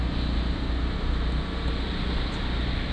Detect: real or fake real